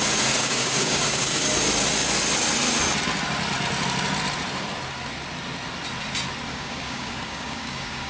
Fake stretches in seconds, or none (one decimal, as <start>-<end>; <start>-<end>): 0.4-1.5; 6.5-8.1